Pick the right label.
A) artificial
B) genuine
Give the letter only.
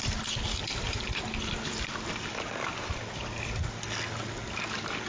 B